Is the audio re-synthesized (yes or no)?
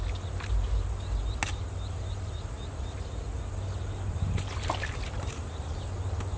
no